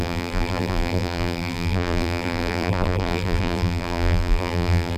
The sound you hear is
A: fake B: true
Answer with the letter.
A